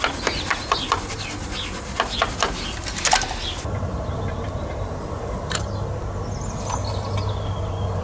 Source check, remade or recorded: recorded